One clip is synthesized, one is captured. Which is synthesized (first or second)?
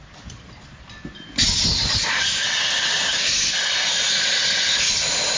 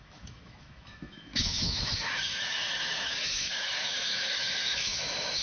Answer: second